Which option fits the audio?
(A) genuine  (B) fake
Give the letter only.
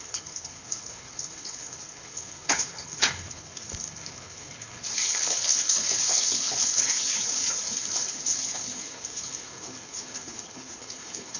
B